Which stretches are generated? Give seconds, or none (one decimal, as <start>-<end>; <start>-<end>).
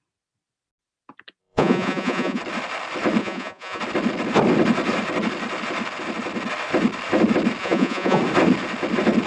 1.4-2.4; 3.2-3.8; 7.6-8.2